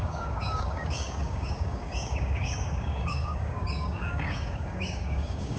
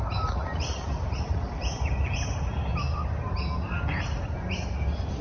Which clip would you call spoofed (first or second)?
first